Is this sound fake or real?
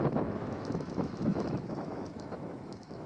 fake